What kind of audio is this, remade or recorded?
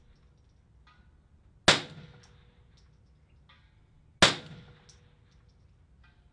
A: recorded